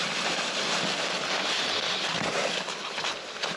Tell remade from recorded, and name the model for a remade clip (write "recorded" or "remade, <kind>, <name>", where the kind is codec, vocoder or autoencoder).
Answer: recorded